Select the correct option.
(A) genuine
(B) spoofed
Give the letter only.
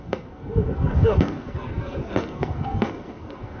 B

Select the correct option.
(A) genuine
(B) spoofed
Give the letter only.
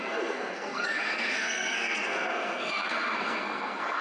B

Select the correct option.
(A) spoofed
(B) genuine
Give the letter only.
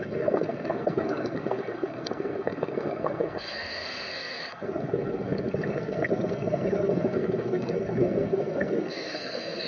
A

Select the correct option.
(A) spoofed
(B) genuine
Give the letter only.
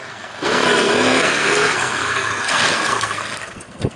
A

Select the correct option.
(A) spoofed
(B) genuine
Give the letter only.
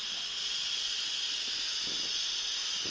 B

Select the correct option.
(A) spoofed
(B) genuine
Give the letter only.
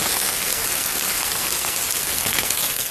A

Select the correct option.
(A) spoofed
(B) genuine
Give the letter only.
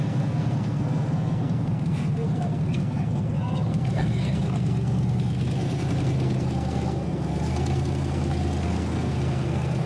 A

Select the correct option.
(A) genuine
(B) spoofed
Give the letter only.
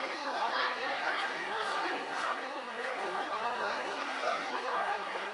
B